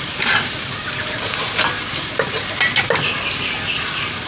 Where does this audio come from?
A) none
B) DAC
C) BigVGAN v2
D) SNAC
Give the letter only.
A